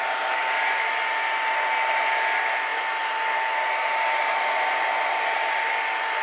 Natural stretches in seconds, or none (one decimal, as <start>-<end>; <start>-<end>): 0.0-6.2